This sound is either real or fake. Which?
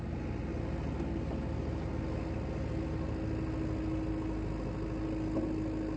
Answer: real